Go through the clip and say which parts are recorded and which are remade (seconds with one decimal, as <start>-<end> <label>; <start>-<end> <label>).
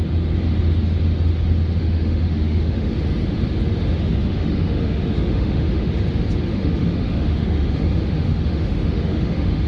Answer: 0.0-1.8 recorded; 1.8-2.9 remade; 2.9-3.8 recorded; 3.8-6.0 remade; 6.0-6.5 recorded; 6.5-9.7 remade